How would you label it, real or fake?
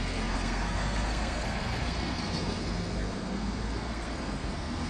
fake